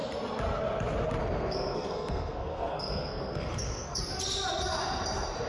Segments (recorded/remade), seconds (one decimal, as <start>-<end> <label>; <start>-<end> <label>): 0.0-1.2 recorded; 1.2-4.0 remade; 4.0-5.5 recorded